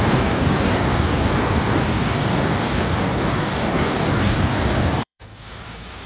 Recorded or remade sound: remade